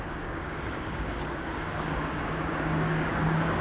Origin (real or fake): fake